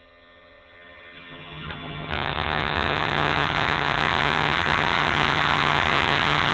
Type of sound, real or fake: fake